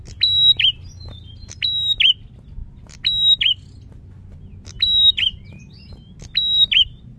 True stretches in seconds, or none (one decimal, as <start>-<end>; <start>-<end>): 0.0-7.2